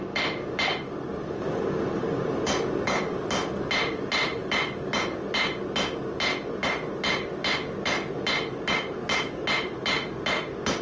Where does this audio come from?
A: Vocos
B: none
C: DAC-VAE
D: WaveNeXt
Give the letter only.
B